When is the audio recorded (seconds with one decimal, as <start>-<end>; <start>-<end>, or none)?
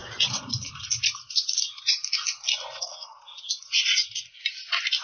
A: 1.2-5.0